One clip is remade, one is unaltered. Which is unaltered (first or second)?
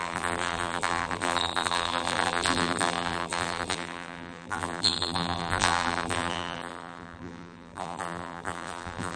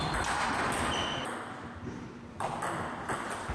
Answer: second